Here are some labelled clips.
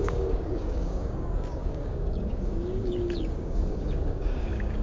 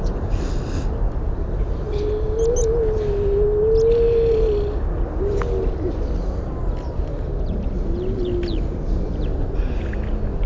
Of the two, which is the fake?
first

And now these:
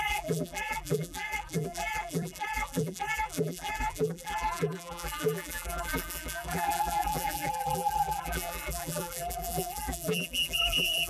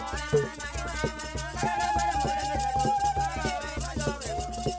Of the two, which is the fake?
first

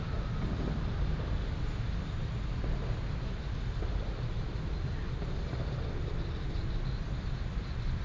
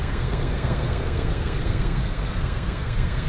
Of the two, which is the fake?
second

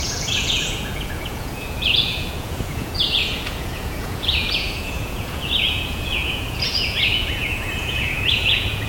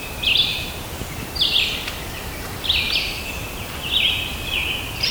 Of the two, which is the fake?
first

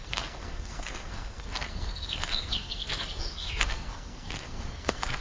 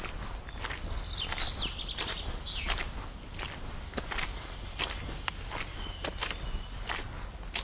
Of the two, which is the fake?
first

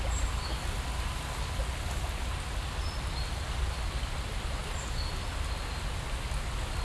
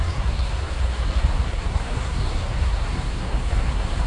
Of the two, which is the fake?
second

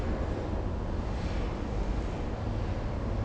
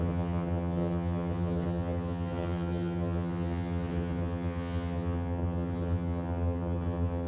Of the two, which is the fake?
second